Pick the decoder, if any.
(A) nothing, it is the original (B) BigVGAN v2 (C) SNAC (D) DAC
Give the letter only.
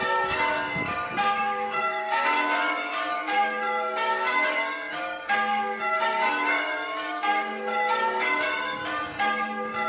D